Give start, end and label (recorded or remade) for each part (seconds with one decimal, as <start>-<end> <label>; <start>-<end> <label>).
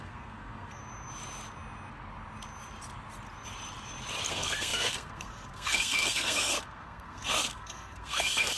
0.0-0.8 remade; 0.8-4.3 recorded; 4.3-8.6 remade